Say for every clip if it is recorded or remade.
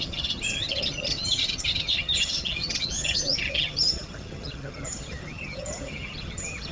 remade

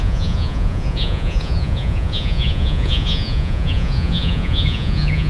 remade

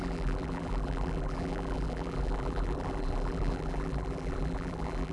remade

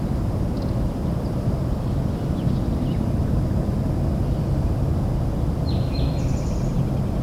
recorded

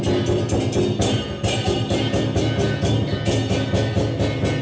recorded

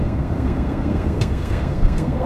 remade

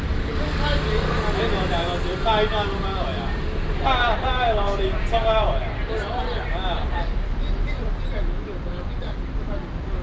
recorded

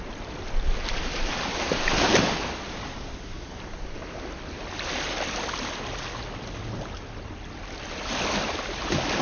recorded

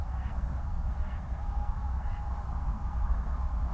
remade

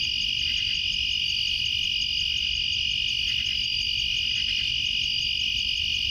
recorded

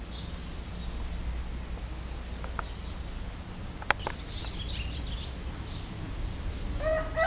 recorded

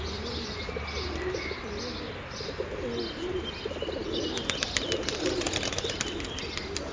recorded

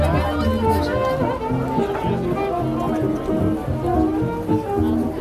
recorded